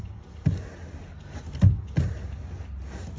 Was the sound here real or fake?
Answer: real